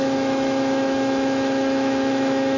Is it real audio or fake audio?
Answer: fake